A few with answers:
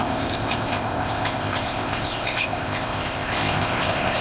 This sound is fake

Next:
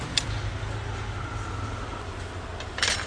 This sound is real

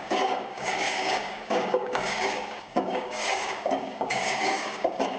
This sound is fake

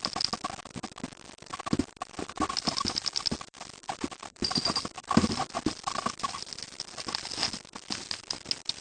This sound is real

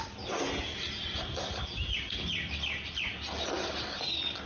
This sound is real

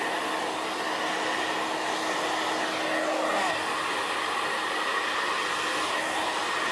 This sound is real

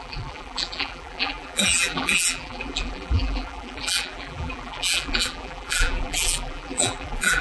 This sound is fake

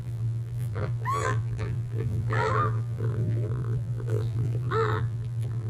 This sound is fake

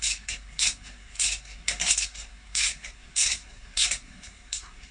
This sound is fake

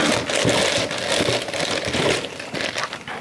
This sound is real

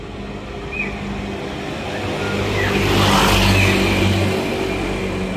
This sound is real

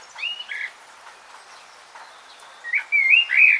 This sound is real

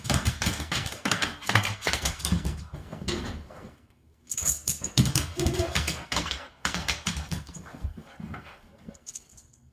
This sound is fake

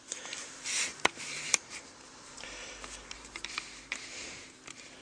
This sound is fake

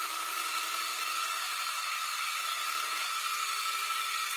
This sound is fake